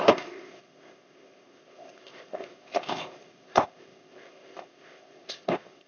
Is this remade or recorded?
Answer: remade